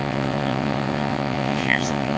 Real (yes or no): no